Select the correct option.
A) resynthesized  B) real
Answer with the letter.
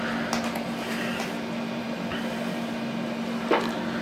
B